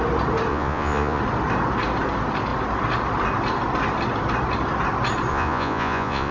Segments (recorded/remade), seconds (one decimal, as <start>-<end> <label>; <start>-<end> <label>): 0.0-0.5 recorded; 0.5-1.2 remade; 1.2-5.3 recorded; 5.3-6.3 remade